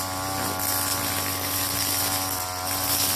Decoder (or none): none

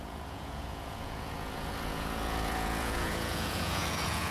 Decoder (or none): vocoder, Vocos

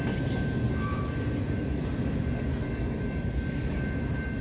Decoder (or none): none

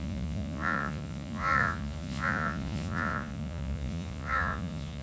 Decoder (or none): vocoder, Vocos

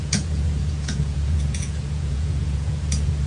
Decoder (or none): vocoder, Vocos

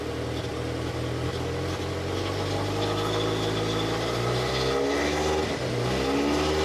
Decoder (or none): none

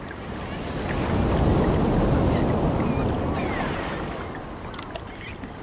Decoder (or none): none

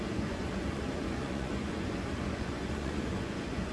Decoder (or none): vocoder, Vocos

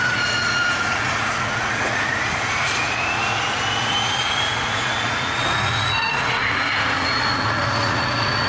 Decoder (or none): vocoder, Vocos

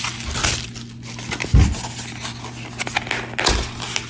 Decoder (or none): none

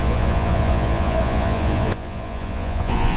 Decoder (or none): vocoder, Vocos